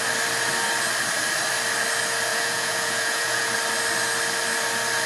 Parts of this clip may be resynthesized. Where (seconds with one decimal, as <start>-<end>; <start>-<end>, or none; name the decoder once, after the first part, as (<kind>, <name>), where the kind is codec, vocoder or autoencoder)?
2.3-3.5 (vocoder, Vocos)